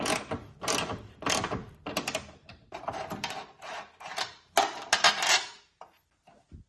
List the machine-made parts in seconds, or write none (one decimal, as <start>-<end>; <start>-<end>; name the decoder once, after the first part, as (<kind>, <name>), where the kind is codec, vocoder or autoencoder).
1.6-5.6 (vocoder, BigVGAN v2)